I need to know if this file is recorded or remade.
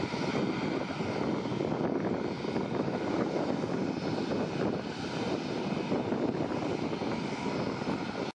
recorded